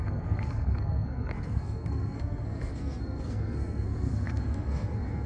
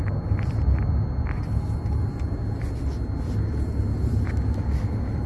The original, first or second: second